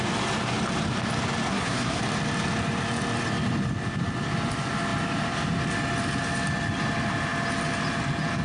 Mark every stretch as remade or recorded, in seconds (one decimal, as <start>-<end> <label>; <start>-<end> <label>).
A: 0.0-1.5 recorded; 1.5-2.0 remade; 2.0-8.4 recorded